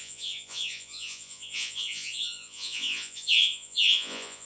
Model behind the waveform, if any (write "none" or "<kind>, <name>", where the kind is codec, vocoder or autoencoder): vocoder, Vocos